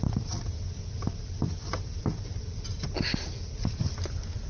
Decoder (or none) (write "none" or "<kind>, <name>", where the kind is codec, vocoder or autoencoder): none